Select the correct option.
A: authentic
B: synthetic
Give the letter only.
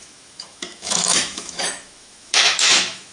B